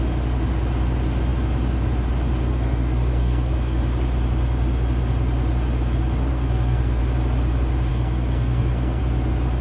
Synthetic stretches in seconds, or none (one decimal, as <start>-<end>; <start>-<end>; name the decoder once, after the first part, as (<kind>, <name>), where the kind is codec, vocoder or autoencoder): 2.5-3.8 (codec, SNAC); 6.3-7.0; 7.9-9.0